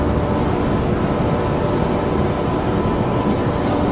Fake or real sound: real